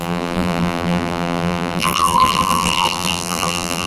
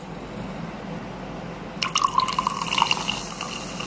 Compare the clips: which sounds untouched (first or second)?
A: second